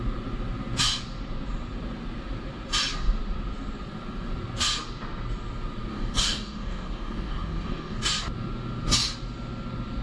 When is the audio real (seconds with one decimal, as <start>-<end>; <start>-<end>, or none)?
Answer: 0.0-5.9; 8.1-10.0